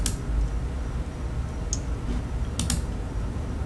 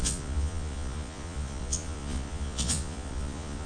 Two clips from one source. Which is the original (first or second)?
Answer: first